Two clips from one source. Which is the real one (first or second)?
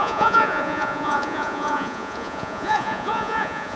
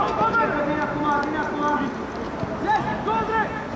second